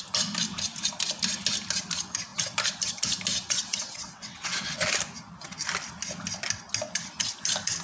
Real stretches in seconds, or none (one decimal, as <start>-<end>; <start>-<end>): 0.0-3.3; 4.8-7.8